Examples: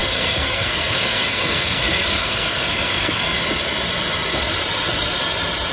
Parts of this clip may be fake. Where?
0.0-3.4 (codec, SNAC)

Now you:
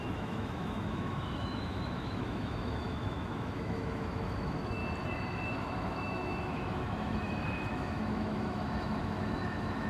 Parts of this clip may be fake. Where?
0.0-4.8 (autoencoder, DAC-VAE); 5.5-9.9

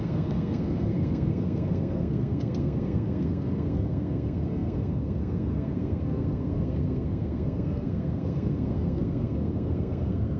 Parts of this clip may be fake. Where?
0.0-10.4 (codec, SNAC)

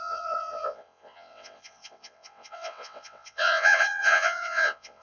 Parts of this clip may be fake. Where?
0.0-5.0 (vocoder, WaveNeXt)

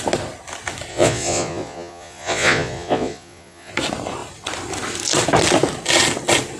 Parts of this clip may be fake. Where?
0.9-3.7 (vocoder, Vocos)

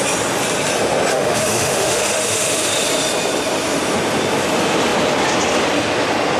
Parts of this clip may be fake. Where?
1.1-2.9 (autoencoder, DAC-VAE)

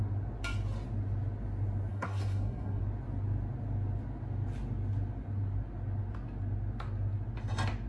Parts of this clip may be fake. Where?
1.9-2.8 (codec, SNAC)